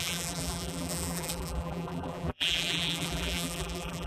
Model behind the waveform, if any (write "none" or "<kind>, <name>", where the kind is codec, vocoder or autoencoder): vocoder, BigVGAN v2